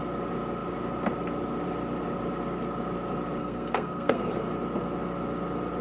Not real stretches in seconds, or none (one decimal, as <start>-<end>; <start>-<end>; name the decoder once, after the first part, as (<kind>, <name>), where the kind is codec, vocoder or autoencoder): 3.4-4.3 (codec, SNAC)